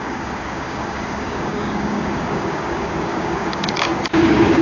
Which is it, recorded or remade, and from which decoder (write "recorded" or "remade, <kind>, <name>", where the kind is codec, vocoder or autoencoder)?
remade, codec, DAC